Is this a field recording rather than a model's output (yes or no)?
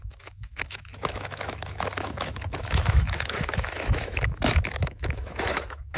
no